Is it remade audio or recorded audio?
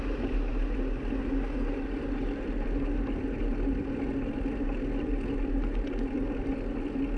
recorded